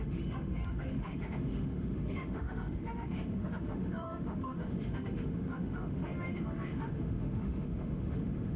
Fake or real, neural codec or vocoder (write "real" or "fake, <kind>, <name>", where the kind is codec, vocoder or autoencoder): fake, autoencoder, DAC-VAE